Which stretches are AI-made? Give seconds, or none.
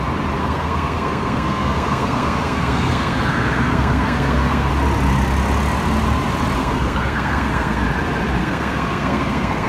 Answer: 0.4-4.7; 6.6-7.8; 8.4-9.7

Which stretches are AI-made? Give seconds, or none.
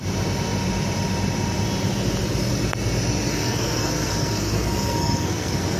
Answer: 3.3-5.8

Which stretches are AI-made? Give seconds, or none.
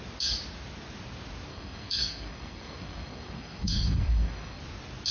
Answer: 1.5-4.6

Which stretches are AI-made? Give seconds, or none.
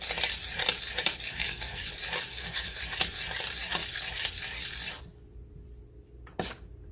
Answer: 1.3-1.8; 2.3-2.8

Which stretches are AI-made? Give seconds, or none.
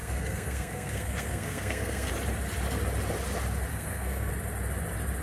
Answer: 0.0-2.1; 3.7-4.3